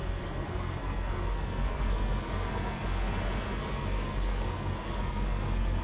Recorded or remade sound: remade